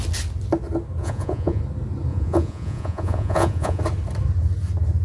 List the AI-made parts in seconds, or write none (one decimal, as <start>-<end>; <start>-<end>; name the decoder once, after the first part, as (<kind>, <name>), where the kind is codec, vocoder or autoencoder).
1.0-1.6 (vocoder, Vocos); 2.1-3.8